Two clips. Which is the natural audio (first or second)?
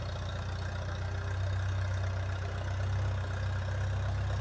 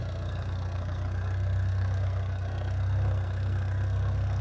first